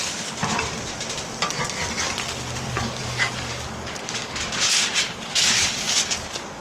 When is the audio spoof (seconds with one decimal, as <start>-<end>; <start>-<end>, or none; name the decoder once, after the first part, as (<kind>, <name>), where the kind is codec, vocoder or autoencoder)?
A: 0.0-0.4 (codec, DAC); 2.6-6.6